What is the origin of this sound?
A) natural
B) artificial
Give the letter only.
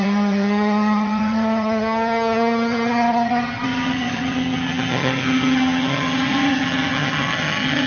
B